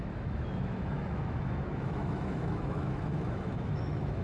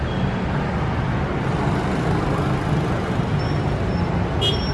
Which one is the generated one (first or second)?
first